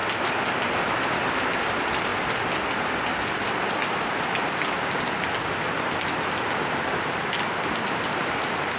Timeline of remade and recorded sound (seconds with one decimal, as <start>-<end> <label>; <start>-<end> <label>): 0.0-8.8 recorded